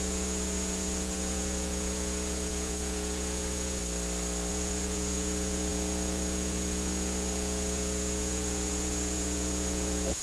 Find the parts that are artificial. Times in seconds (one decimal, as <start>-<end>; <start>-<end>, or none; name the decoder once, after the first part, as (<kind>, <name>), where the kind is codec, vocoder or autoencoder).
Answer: 0.0-3.8 (vocoder, Vocos); 4.5-10.2